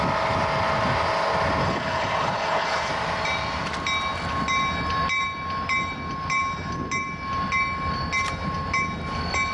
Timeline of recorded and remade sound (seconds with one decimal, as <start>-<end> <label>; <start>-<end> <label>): 0.0-1.6 recorded; 1.6-2.9 remade; 2.9-9.5 recorded